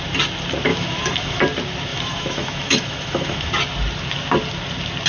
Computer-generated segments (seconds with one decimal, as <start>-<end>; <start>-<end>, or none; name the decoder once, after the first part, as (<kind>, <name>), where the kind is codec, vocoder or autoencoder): 0.7-1.4 (autoencoder, DAC-VAE); 1.9-3.5